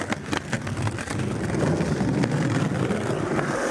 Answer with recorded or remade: recorded